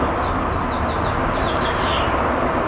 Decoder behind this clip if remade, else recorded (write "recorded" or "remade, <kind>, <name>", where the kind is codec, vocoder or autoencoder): recorded